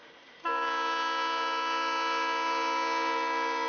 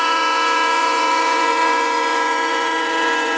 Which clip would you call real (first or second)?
first